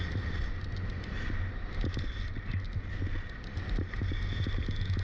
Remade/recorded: recorded